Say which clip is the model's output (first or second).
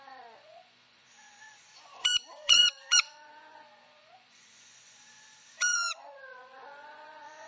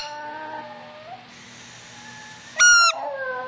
first